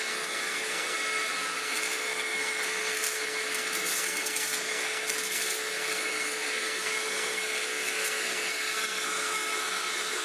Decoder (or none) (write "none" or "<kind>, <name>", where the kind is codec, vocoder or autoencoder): codec, SNAC